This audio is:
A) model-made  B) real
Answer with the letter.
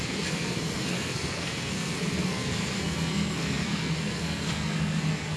A